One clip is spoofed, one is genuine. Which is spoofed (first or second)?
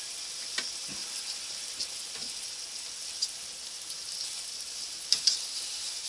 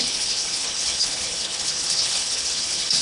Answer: second